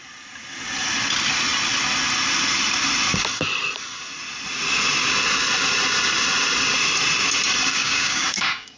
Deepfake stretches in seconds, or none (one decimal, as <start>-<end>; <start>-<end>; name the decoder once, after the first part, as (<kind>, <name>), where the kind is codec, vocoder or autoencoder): 7.7-8.8 (codec, DAC)